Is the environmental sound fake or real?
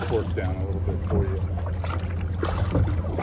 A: real